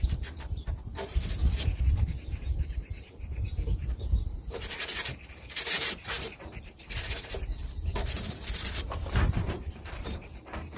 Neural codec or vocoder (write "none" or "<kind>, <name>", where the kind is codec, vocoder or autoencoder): vocoder, BigVGAN v2